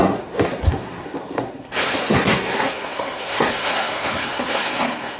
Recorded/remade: remade